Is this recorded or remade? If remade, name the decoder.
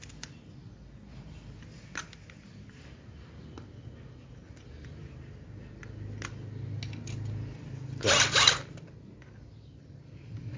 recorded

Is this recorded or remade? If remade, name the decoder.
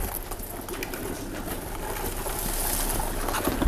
recorded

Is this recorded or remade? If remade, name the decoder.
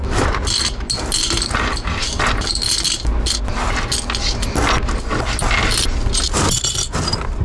recorded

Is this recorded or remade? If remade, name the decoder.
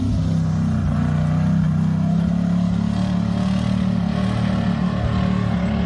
recorded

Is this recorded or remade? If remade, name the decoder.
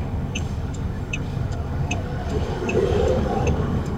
remade, codec, DAC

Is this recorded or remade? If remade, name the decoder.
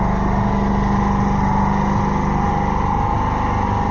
recorded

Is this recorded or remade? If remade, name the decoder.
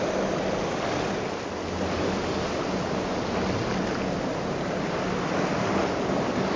recorded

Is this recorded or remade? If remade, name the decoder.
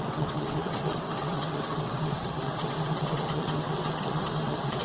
remade, vocoder, WaveNeXt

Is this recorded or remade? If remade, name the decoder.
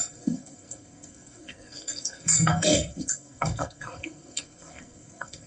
remade, codec, SNAC